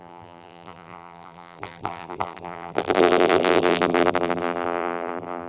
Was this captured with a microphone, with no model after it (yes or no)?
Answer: no